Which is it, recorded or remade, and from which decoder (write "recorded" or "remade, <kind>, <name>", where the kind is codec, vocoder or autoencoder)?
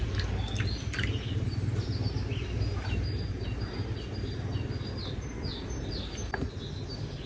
recorded